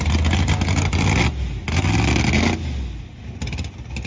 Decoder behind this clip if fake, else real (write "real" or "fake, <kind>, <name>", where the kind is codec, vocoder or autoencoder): real